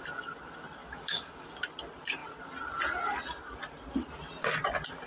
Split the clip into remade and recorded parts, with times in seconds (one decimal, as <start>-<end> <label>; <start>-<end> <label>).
0.0-0.8 recorded; 0.8-1.5 remade; 1.5-5.1 recorded